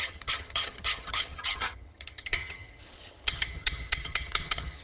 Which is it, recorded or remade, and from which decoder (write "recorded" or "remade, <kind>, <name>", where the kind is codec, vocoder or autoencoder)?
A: remade, vocoder, HiFi-GAN